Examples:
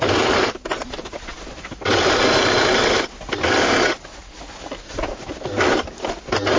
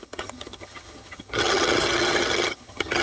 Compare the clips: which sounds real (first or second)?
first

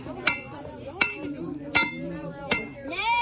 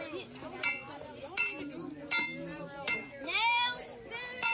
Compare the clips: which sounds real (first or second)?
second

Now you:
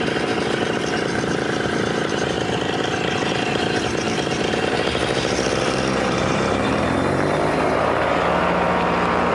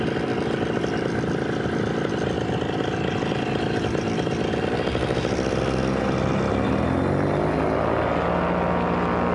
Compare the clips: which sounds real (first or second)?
second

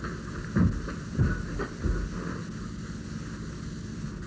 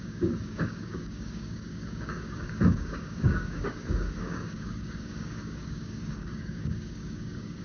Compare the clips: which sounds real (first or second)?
first